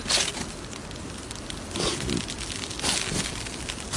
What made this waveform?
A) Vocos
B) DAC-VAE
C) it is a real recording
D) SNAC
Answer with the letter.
C